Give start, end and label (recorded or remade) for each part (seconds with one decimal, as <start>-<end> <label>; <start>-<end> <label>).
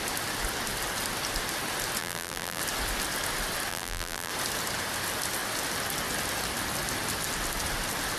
0.0-2.0 recorded; 2.0-2.6 remade; 2.6-3.7 recorded; 3.7-4.3 remade; 4.3-8.2 recorded